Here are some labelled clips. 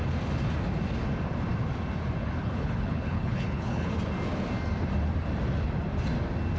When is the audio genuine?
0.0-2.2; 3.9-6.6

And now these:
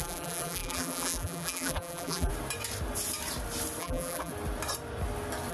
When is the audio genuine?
2.3-3.8; 4.3-5.5

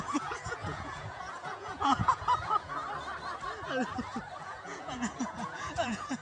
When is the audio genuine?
2.8-4.4

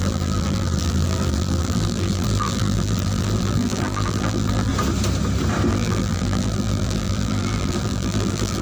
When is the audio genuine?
4.7-5.7